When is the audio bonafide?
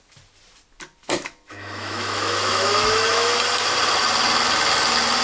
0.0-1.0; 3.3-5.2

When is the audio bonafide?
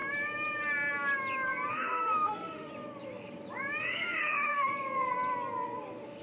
0.0-1.7; 2.7-3.8; 4.7-6.2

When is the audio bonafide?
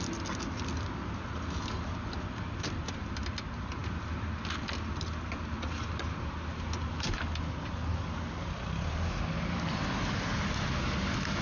0.0-11.4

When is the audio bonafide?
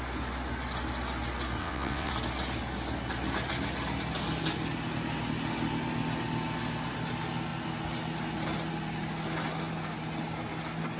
0.0-1.6; 2.1-11.0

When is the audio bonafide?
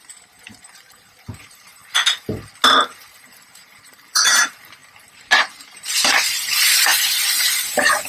1.8-2.7; 4.8-5.7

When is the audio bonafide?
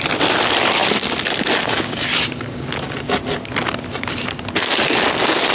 0.0-5.5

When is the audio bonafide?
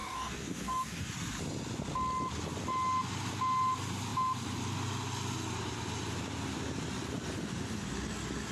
1.1-8.5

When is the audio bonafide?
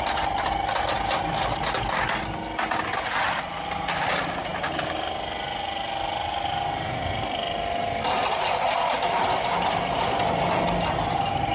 0.0-11.5